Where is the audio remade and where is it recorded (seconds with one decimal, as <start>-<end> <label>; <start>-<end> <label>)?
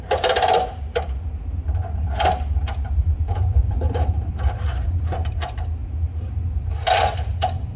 0.0-1.8 remade; 1.8-2.9 recorded; 2.9-7.8 remade